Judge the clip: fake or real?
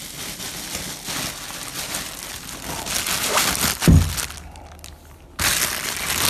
real